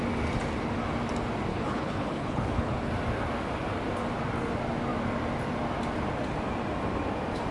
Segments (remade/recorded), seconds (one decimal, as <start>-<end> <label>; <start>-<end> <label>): 0.0-1.5 recorded; 1.5-2.9 remade; 2.9-7.5 recorded